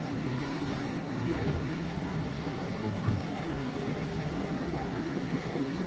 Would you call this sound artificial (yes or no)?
yes